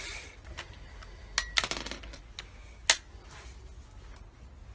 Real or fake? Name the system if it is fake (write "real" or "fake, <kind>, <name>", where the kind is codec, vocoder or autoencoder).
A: real